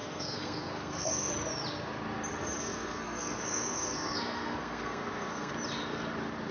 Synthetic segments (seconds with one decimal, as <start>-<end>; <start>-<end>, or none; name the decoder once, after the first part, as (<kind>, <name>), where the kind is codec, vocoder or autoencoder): 0.0-1.3 (codec, SNAC); 2.6-5.5